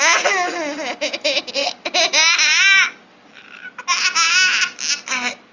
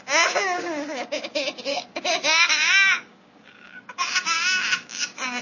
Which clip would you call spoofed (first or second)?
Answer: second